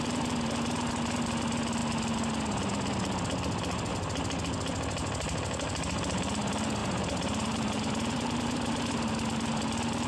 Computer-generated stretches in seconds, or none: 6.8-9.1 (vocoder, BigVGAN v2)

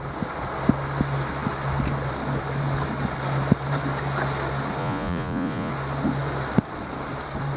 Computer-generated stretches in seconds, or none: 4.8-5.7 (vocoder, Vocos)